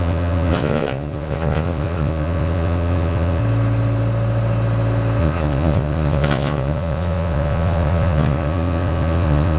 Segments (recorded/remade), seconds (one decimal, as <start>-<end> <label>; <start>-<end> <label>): 0.0-3.4 remade; 3.4-5.2 recorded; 5.2-9.6 remade